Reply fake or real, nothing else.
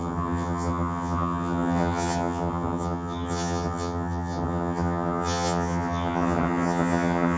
fake